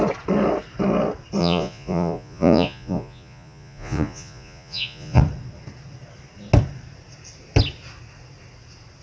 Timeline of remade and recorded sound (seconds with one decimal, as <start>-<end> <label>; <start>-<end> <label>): 0.0-1.4 recorded; 1.4-5.2 remade; 5.2-9.0 recorded